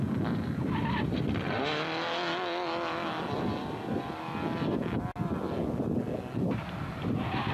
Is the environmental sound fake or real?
real